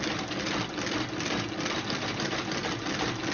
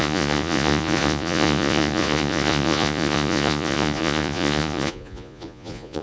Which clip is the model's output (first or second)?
second